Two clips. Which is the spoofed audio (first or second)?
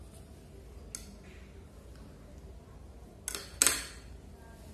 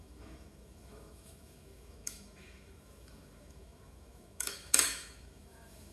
second